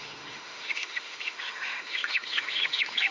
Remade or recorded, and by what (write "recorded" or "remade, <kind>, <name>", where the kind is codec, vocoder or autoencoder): remade, autoencoder, DAC-VAE